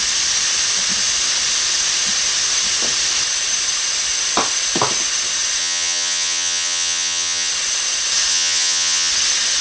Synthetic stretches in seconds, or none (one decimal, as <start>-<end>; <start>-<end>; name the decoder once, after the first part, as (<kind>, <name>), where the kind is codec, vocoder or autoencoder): 5.6-7.5 (vocoder, HiFi-GAN); 8.3-9.1